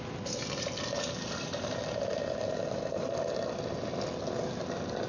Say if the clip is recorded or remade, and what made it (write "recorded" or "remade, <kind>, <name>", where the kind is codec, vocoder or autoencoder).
recorded